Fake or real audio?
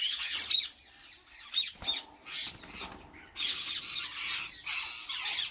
real